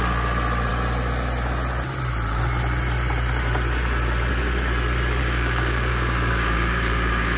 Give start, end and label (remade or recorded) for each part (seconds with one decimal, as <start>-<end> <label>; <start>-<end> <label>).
0.0-5.2 recorded; 5.2-7.4 remade